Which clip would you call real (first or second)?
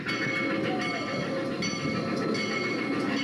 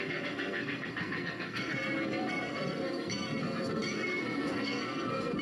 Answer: first